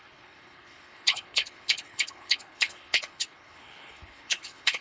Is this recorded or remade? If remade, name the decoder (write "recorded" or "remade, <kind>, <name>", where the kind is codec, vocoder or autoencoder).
remade, codec, HILCodec